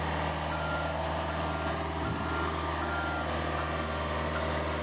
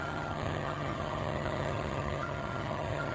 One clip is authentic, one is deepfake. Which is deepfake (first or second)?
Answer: second